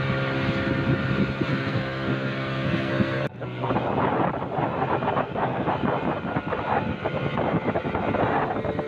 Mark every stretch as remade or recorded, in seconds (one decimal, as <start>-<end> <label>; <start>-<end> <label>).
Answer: 0.0-1.5 recorded; 1.5-3.7 remade; 3.7-5.2 recorded; 5.2-5.7 remade; 5.7-8.9 recorded